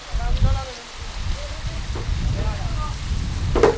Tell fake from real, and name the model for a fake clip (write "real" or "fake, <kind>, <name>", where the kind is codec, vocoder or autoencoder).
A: real